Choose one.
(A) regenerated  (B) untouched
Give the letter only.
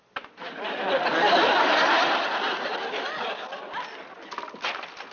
B